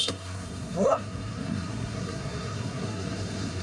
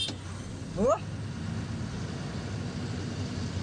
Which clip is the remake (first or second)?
first